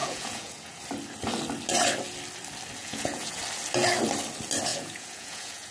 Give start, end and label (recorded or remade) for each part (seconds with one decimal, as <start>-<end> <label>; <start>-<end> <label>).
0.0-0.8 remade; 0.8-2.8 recorded; 2.8-3.4 remade; 3.4-4.7 recorded; 4.7-5.7 remade